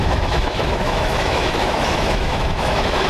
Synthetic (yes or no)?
yes